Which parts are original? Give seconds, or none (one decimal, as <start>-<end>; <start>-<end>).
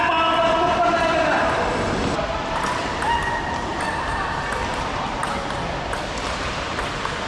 0.0-0.9; 2.8-3.7